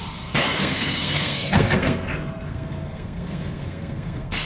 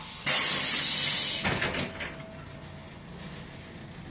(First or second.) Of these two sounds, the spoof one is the first